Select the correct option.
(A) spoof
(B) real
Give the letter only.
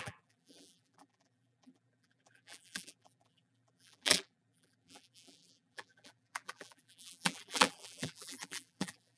A